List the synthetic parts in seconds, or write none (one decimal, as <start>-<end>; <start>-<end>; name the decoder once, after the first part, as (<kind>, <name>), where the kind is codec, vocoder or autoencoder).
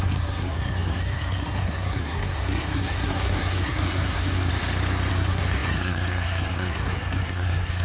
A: 0.0-4.5 (codec, SNAC); 5.1-7.8